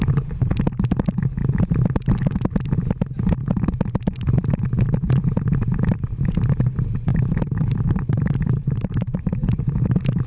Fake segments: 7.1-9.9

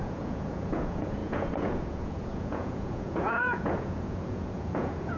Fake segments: 0.0-5.2

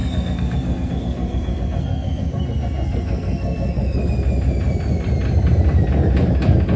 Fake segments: 0.0-4.1

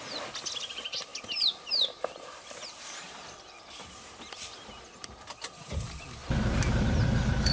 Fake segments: none

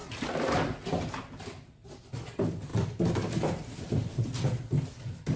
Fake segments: 2.0-2.7; 3.3-5.4

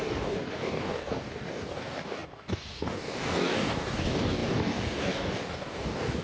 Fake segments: 0.0-6.2

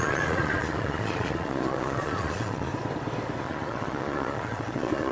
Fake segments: 0.0-2.7; 3.4-5.1